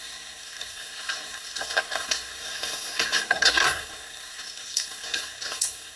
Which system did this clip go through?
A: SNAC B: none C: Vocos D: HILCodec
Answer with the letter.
A